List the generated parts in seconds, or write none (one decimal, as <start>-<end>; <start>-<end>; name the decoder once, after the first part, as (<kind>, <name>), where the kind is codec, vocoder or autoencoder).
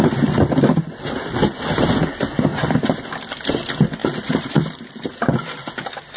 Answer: none